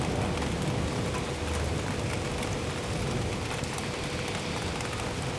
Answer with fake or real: real